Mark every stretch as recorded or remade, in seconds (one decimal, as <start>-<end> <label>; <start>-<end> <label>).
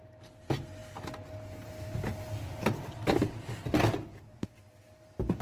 0.0-5.4 recorded